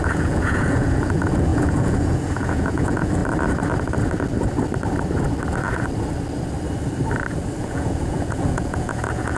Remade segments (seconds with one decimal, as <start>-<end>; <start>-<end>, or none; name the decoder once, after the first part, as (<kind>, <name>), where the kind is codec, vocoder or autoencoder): 0.0-3.2 (vocoder, Vocos); 7.6-9.4